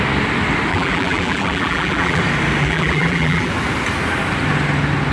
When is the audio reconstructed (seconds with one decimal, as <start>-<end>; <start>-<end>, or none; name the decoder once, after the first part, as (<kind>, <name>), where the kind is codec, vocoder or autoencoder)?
0.7-2.2 (vocoder, BigVGAN v2); 2.6-3.5